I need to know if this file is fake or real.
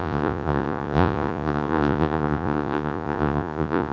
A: fake